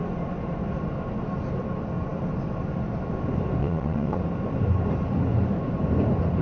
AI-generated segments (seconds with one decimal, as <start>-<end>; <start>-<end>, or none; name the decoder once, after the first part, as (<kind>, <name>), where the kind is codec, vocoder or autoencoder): 3.6-4.2 (vocoder, Vocos)